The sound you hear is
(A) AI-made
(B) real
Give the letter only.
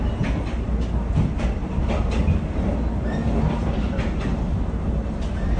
B